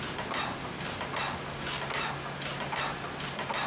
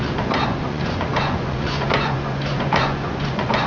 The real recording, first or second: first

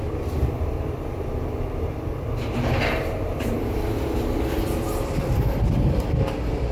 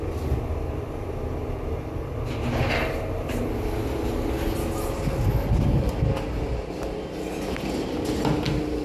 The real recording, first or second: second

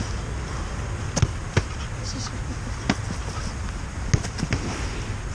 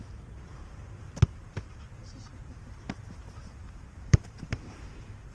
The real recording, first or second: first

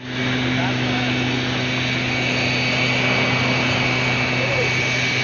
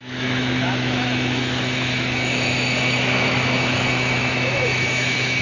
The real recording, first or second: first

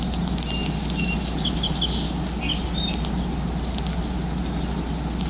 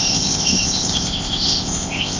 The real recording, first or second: first